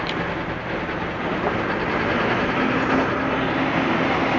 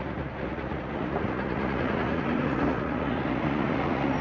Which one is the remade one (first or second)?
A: second